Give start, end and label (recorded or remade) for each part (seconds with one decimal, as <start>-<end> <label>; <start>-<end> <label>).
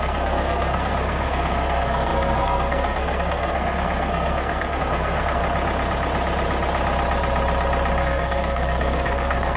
0.0-5.4 remade; 5.4-8.0 recorded; 8.0-9.6 remade